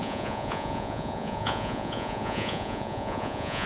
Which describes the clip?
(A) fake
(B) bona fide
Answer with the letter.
A